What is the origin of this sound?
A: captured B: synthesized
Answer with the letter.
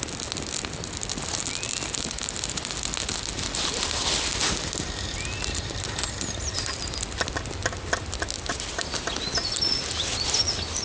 A